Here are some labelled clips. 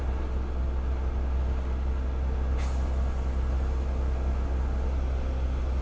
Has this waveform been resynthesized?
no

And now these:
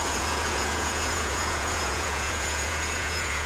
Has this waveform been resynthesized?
yes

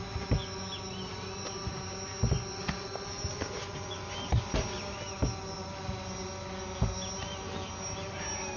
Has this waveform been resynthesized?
no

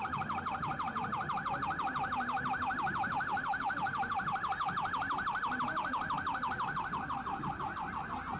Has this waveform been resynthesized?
no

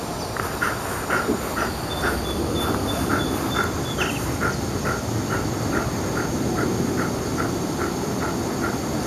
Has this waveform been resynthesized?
no